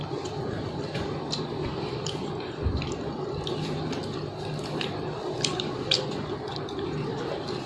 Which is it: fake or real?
fake